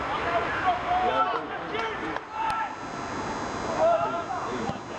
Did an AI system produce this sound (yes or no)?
no